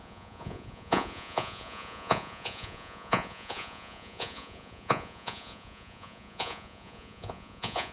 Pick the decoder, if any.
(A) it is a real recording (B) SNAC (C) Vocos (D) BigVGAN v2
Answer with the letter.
C